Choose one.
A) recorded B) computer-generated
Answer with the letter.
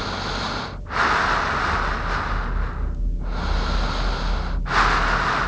A